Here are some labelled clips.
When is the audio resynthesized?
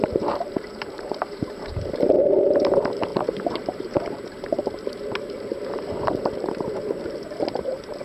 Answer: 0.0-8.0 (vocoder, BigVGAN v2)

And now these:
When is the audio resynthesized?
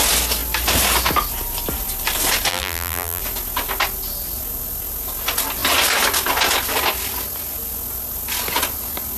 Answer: 2.5-3.2 (vocoder, BigVGAN v2)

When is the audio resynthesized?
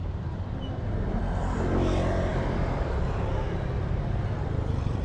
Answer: 0.0-0.5 (vocoder, BigVGAN v2)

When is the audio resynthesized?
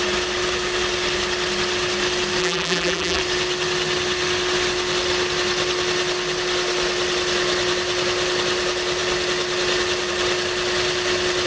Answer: 2.4-3.2 (vocoder, BigVGAN v2)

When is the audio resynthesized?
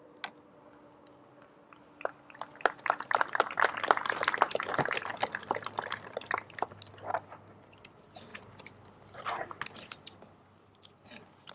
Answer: 5.1-6.9 (vocoder, BigVGAN v2)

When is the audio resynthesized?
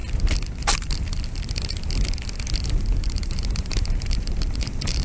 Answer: 3.0-5.0 (vocoder, BigVGAN v2)